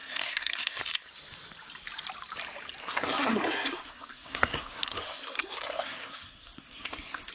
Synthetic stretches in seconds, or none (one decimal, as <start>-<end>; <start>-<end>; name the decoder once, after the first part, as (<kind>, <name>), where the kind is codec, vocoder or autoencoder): 0.0-0.8 (codec, SNAC); 2.8-7.3

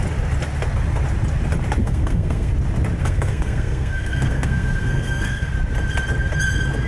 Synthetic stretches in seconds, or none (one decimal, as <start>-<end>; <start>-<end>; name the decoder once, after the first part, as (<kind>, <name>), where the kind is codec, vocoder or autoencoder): 1.8-2.5 (codec, SNAC); 3.0-5.5

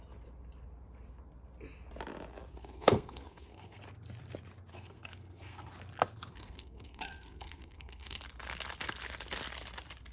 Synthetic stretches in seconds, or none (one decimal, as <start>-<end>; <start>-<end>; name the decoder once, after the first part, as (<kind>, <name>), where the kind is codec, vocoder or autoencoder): 2.5-3.8 (codec, SNAC); 4.7-5.7; 6.3-8.2

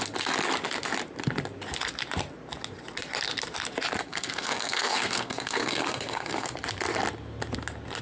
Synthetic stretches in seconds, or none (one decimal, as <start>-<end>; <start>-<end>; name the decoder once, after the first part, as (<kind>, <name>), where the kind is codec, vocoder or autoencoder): 4.1-6.5 (codec, SNAC)

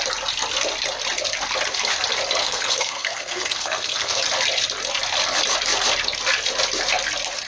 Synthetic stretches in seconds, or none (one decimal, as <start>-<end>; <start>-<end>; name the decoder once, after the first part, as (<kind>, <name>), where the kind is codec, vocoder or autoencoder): 2.4-4.2 (codec, SNAC)

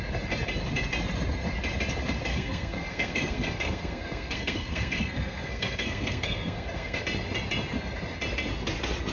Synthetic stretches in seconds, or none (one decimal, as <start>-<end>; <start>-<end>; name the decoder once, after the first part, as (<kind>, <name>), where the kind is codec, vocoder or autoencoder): 2.3-7.0 (codec, SNAC)